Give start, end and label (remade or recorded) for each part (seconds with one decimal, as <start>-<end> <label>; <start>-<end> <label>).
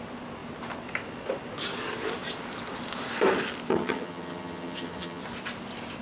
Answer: 0.0-3.7 recorded; 3.7-5.2 remade; 5.2-6.0 recorded